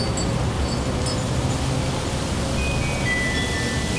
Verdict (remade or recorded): recorded